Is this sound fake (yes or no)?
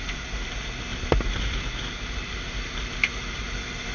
no